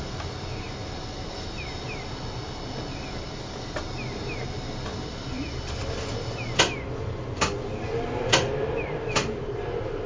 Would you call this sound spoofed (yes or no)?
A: no